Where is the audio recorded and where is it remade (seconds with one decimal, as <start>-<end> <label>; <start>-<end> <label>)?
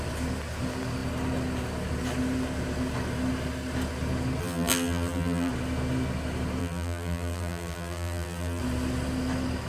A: 0.0-4.4 recorded; 4.4-5.5 remade; 5.5-6.6 recorded; 6.6-8.6 remade; 8.6-9.7 recorded